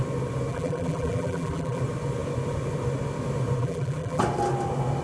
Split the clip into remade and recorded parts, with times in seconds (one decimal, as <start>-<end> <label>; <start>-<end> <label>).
0.0-0.5 recorded; 0.5-1.8 remade; 1.8-3.6 recorded; 3.6-4.2 remade; 4.2-5.0 recorded